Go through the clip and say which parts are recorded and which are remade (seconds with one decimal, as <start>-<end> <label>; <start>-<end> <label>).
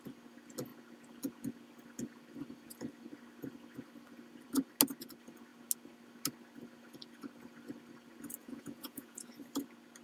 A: 0.0-8.4 recorded; 8.4-9.3 remade; 9.3-10.0 recorded